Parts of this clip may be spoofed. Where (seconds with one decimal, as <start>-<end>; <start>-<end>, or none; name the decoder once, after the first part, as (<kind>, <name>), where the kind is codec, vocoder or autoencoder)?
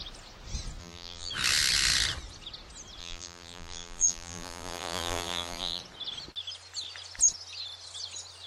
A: 0.8-1.3 (vocoder, BigVGAN v2); 3.0-5.8